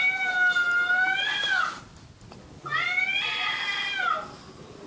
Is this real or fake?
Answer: real